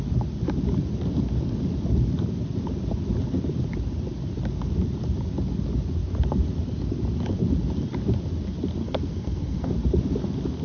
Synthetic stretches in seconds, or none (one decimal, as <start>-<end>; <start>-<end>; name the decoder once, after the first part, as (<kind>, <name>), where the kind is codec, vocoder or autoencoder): 8.8-9.7 (codec, SNAC)